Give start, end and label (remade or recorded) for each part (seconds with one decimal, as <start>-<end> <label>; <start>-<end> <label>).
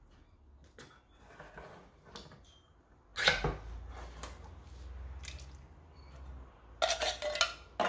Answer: 0.0-7.9 recorded